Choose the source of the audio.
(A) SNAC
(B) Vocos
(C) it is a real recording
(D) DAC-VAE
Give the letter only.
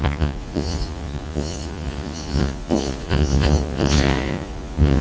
B